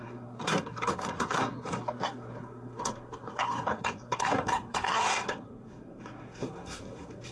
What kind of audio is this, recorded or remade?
remade